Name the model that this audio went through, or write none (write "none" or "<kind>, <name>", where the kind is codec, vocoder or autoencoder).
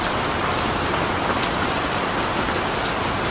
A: none